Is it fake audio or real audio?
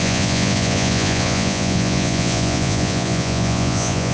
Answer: fake